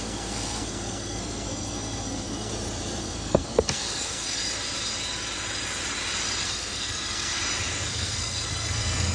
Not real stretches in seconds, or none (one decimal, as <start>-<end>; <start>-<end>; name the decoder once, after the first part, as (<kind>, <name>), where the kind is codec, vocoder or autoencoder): 0.0-2.5 (codec, SNAC); 3.0-4.4; 6.4-7.4; 7.9-9.1